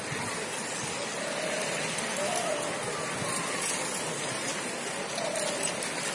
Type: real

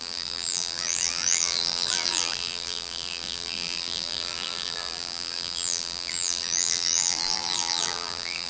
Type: fake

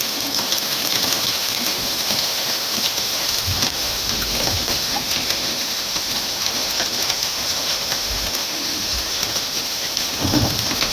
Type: fake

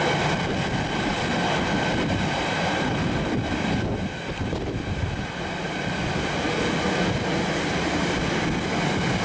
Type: real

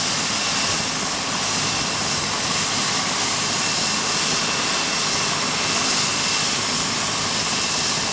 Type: real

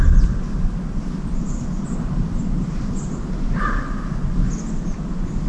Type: real